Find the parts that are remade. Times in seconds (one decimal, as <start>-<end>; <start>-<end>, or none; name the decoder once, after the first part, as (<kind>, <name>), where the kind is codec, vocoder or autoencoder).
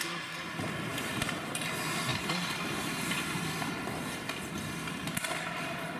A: 0.9-1.6 (vocoder, BigVGAN v2); 2.1-5.6